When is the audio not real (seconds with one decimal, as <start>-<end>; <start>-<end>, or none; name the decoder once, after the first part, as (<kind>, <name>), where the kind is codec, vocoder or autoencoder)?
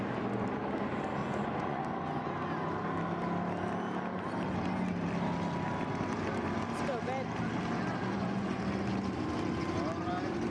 1.2-1.8 (vocoder, Vocos); 8.1-8.6